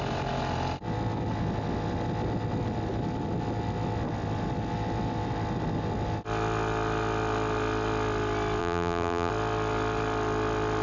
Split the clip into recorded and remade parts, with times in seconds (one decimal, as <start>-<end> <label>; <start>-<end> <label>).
0.0-8.6 recorded; 8.6-9.3 remade; 9.3-10.8 recorded